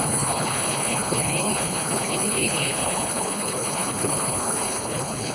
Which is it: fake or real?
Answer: fake